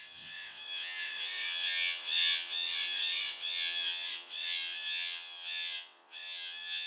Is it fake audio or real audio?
fake